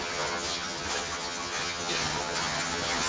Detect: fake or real fake